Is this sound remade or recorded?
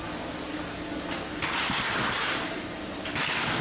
recorded